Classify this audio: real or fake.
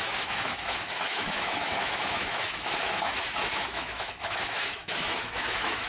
fake